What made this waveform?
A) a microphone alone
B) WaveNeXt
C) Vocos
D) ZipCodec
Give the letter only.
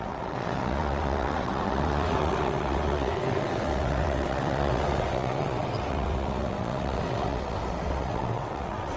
B